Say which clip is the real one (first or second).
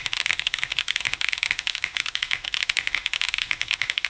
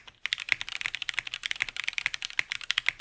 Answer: second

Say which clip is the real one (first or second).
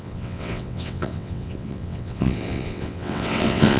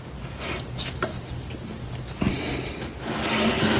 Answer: second